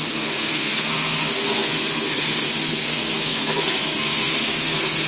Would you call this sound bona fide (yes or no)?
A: no